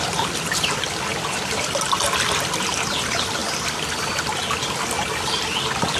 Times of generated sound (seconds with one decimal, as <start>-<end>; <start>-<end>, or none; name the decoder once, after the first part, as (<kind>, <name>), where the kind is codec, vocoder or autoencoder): none